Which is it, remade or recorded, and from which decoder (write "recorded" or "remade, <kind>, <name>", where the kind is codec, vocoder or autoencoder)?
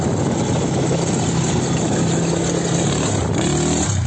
recorded